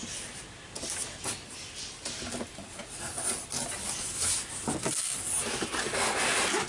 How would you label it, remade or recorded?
recorded